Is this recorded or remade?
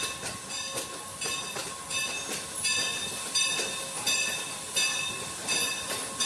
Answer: recorded